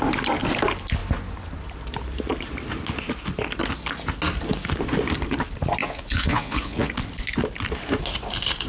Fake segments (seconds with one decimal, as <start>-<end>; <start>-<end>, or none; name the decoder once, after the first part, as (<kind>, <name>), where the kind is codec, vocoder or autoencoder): 5.8-6.9 (vocoder, Vocos)